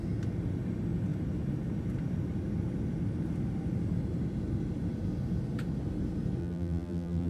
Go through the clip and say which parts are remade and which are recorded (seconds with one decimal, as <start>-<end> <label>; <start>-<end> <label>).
0.0-6.4 recorded; 6.4-7.3 remade

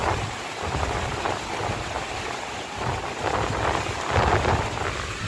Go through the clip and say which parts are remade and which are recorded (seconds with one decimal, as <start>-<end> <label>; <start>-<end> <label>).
0.0-5.3 recorded

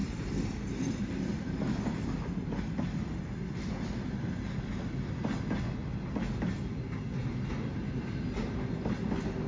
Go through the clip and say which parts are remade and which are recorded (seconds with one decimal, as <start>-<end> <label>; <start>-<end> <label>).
0.0-1.8 remade; 1.8-9.5 recorded

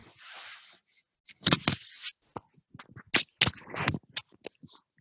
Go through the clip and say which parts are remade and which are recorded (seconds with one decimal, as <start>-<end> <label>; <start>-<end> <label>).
0.0-5.0 recorded

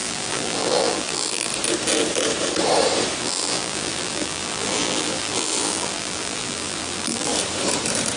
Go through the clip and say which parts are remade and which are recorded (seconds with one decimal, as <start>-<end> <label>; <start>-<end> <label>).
0.0-1.5 remade; 1.5-3.2 recorded; 3.2-7.3 remade; 7.3-8.2 recorded